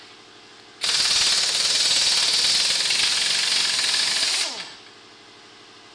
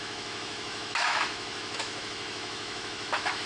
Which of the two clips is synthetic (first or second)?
second